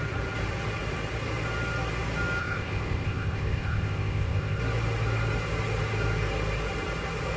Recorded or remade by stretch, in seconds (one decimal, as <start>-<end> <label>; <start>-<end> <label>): 0.0-2.4 recorded; 2.4-4.6 remade; 4.6-7.4 recorded